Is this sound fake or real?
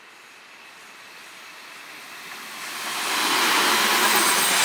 real